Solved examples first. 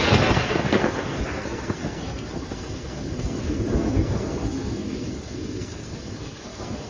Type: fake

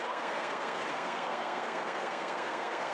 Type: fake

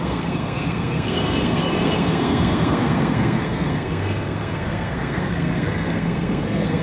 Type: fake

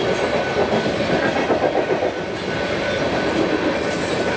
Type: real